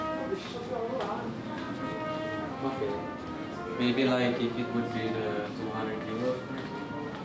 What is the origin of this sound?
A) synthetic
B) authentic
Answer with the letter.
B